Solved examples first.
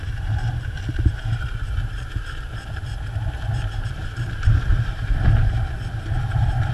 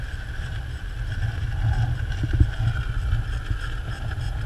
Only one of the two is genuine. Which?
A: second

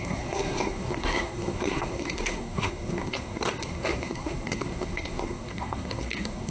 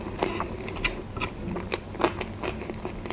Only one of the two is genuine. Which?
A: second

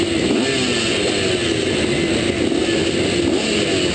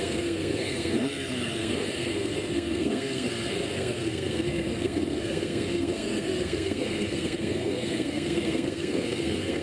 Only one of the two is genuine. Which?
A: first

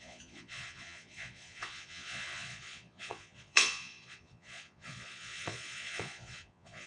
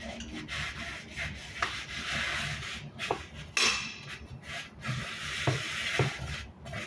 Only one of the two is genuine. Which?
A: second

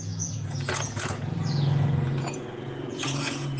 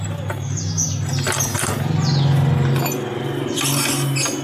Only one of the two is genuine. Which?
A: second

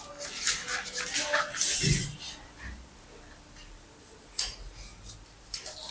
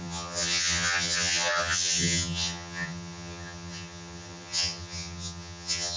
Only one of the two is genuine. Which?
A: first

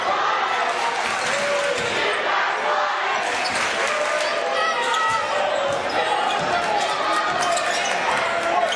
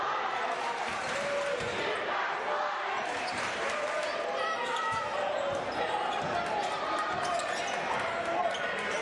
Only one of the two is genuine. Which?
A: first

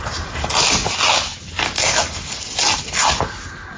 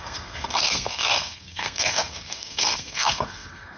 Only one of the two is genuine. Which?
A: first